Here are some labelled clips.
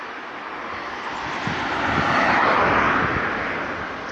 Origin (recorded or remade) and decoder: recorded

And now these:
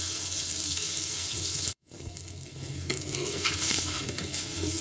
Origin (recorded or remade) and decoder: remade, codec, SNAC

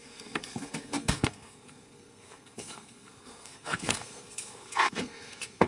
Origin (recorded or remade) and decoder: remade, codec, SNAC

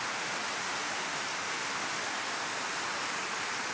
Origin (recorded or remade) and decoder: recorded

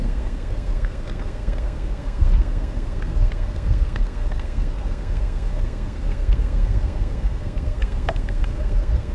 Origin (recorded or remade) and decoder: remade, codec, SNAC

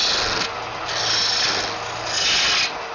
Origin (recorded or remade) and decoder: recorded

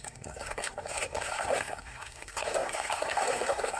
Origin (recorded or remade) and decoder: remade, codec, SNAC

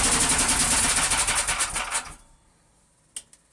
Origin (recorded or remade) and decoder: recorded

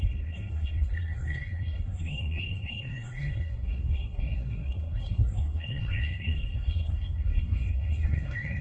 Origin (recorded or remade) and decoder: remade, codec, SNAC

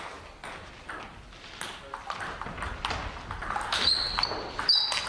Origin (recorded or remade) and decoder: recorded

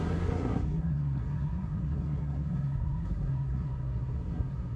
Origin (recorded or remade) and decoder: remade, codec, SNAC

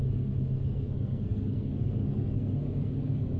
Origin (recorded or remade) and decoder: remade, codec, SNAC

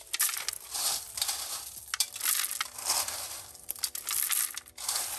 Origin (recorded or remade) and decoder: recorded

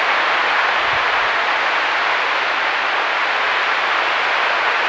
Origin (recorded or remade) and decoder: recorded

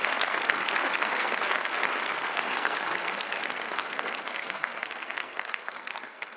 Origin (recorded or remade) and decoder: remade, codec, SNAC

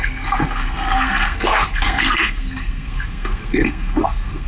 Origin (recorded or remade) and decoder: remade, codec, SNAC